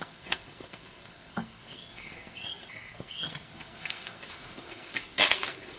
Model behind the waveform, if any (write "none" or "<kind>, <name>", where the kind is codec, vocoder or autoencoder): codec, SNAC